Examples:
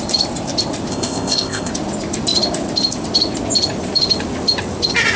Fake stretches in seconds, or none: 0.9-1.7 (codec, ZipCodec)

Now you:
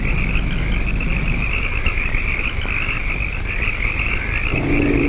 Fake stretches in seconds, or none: none